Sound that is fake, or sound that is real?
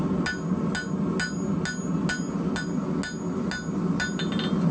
real